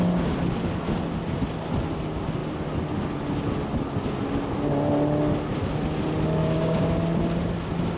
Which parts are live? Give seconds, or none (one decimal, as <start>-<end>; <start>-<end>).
0.0-6.4; 6.9-8.0